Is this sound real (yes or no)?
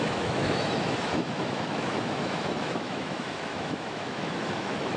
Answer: no